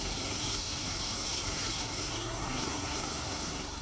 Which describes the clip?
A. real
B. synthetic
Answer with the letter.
B